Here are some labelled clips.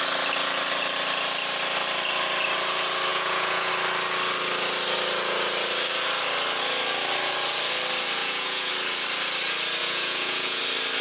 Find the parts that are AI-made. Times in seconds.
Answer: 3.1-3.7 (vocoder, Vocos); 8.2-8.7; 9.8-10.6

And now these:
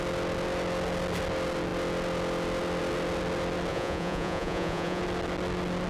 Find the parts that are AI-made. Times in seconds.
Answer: 3.7-5.0 (vocoder, Vocos)

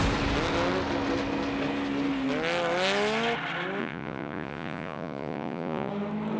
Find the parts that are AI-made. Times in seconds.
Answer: 3.8-5.9 (vocoder, Vocos)

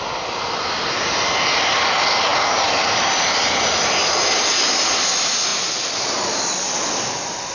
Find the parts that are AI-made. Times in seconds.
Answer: none

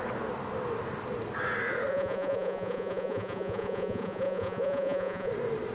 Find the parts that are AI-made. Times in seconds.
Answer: 1.9-5.3 (vocoder, Vocos)

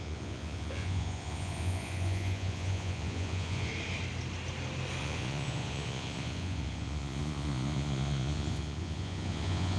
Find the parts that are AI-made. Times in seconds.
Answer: 0.0-3.7 (vocoder, Vocos); 5.0-9.8